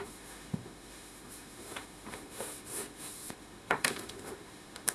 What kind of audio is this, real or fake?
fake